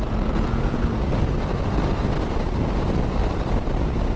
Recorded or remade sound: recorded